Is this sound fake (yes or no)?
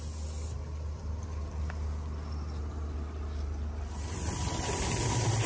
no